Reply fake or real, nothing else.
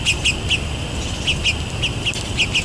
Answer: real